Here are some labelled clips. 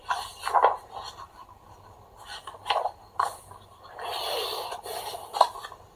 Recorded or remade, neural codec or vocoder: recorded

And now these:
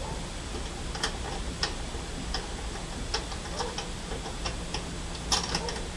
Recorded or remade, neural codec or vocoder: recorded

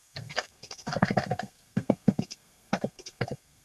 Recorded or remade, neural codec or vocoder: remade, codec, SNAC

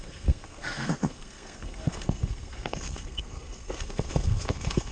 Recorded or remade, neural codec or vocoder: remade, codec, SNAC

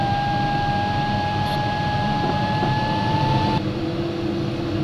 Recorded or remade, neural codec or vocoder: recorded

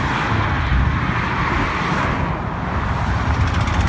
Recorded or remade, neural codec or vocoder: recorded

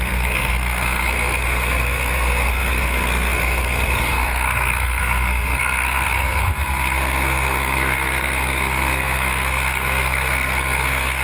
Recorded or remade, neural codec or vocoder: remade, codec, SNAC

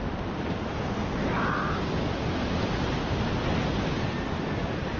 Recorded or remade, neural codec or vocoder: recorded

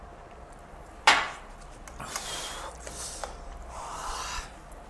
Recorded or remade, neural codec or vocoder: recorded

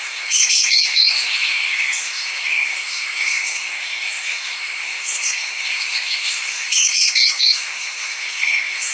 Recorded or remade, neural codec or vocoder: remade, codec, SNAC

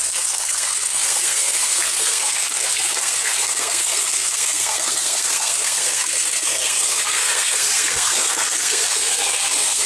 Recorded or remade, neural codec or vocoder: remade, codec, SNAC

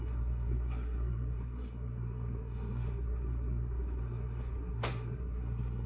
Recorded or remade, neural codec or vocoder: remade, codec, SNAC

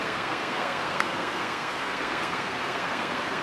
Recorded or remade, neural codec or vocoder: remade, codec, SNAC